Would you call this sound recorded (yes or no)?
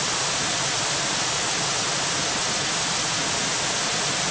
yes